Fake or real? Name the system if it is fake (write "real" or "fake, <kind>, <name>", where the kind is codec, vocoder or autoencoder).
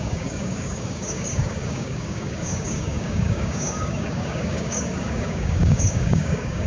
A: fake, codec, DAC